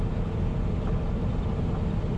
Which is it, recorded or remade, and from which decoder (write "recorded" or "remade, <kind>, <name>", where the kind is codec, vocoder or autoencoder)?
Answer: recorded